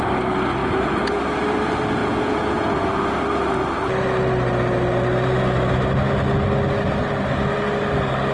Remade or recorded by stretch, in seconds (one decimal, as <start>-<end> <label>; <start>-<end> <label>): 0.0-0.6 recorded; 0.6-1.2 remade; 1.2-2.0 recorded; 2.0-2.9 remade; 2.9-8.3 recorded